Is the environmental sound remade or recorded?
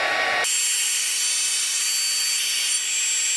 recorded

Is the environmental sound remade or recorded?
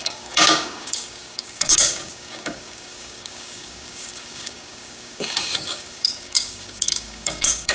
remade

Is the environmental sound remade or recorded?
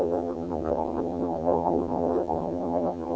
remade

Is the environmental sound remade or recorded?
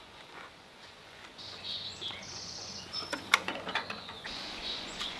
remade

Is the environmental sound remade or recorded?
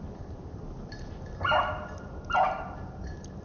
recorded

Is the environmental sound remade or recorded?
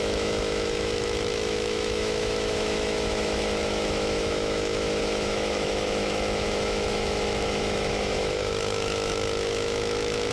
remade